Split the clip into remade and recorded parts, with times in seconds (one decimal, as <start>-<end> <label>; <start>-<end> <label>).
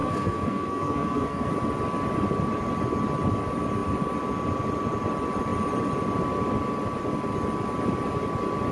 0.0-1.5 remade; 1.5-8.7 recorded